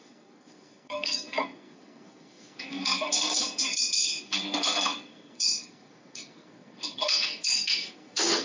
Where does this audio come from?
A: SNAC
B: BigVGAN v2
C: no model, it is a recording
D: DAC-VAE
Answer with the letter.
A